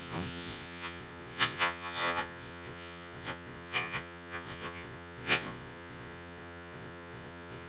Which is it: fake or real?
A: fake